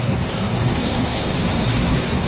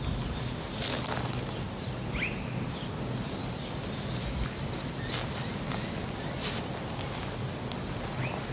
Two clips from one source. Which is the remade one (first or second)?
first